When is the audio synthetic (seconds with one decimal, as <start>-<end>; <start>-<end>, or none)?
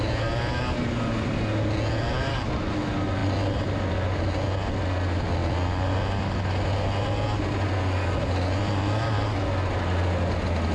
none